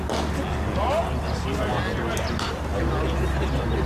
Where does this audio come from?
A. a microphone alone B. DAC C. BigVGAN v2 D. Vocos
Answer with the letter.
A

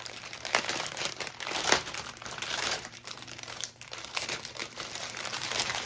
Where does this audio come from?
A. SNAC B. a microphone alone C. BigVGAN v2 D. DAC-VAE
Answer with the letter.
C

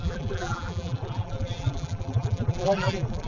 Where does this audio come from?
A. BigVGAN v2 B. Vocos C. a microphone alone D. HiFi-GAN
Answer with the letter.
A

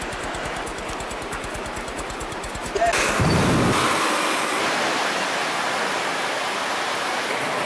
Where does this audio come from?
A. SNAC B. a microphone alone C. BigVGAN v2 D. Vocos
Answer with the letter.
B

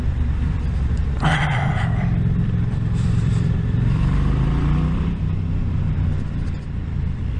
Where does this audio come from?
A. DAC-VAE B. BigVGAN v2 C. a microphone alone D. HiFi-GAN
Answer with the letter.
B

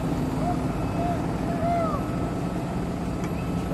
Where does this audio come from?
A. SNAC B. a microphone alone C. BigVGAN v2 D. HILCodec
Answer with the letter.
B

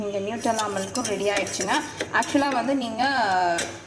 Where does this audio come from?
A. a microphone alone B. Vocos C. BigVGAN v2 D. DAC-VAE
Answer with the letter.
C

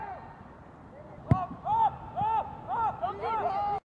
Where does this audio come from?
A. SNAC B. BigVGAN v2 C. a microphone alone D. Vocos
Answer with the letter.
C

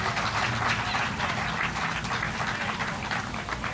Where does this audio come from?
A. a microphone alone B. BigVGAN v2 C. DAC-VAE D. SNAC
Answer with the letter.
B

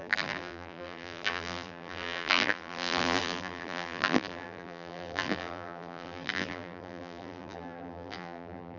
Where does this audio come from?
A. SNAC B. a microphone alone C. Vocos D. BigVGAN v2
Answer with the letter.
D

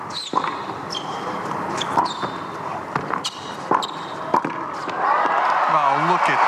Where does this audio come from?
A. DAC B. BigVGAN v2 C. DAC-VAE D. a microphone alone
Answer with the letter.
D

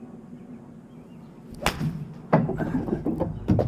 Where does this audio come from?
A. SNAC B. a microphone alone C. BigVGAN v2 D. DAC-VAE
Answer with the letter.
B